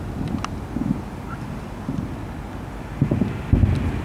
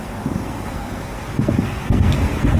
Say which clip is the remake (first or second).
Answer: second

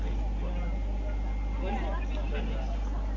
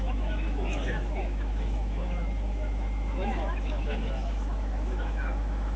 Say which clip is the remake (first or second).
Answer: second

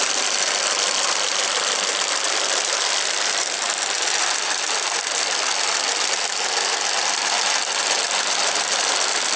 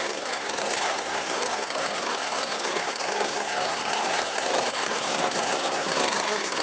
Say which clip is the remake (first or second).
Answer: second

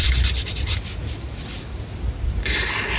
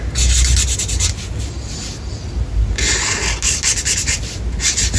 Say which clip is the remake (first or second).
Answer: first